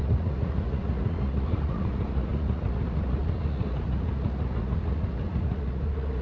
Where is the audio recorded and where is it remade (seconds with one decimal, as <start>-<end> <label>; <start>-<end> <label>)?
0.0-6.2 remade